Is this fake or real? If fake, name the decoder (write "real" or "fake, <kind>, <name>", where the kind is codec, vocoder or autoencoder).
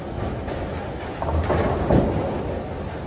real